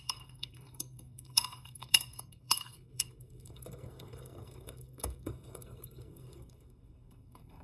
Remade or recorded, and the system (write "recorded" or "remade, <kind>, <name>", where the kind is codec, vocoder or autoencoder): remade, codec, SNAC